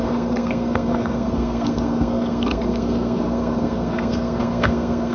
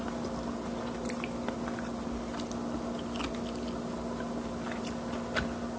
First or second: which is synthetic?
first